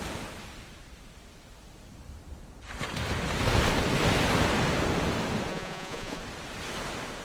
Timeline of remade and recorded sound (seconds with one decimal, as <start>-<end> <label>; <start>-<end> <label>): 0.0-5.5 recorded; 5.5-6.2 remade; 6.2-7.2 recorded